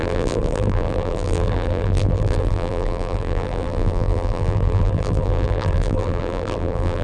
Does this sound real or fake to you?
fake